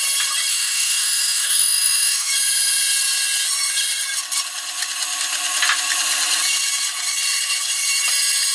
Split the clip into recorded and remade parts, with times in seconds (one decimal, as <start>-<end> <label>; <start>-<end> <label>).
0.0-0.5 recorded; 0.5-2.3 remade; 2.3-8.5 recorded

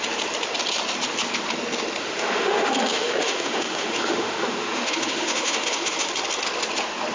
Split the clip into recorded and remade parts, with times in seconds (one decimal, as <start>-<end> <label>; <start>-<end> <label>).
0.0-2.0 recorded; 2.0-6.1 remade; 6.1-7.1 recorded

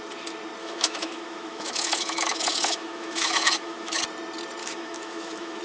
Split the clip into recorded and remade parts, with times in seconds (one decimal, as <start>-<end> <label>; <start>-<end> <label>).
0.0-0.6 recorded; 0.6-4.0 remade; 4.0-4.6 recorded; 4.6-5.6 remade

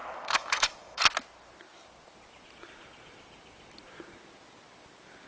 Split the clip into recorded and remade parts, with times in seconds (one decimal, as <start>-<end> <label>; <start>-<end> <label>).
0.0-1.0 remade; 1.0-5.3 recorded